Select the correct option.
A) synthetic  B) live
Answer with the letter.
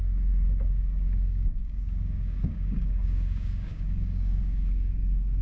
A